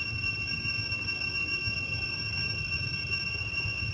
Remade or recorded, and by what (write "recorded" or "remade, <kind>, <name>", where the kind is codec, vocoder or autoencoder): recorded